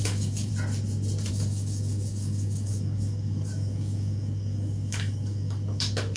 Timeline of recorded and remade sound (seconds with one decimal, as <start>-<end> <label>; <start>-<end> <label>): 0.0-0.5 remade; 0.5-1.3 recorded; 1.3-6.2 remade